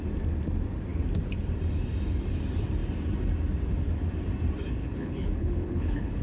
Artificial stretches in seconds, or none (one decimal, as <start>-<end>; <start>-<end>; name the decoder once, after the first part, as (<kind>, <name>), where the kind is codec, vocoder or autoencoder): 4.8-6.2 (codec, HILCodec)